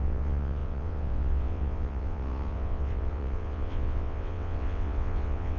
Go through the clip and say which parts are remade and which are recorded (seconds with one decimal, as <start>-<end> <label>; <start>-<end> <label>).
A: 0.0-5.6 remade